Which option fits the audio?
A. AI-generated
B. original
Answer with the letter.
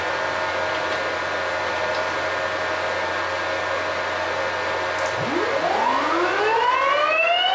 B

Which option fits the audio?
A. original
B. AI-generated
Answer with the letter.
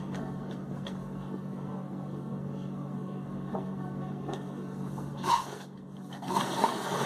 B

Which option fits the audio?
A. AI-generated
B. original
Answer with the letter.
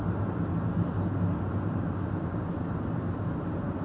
B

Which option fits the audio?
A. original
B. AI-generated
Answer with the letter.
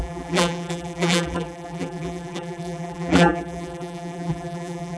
B